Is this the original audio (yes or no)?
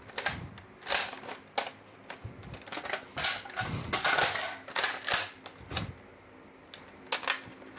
yes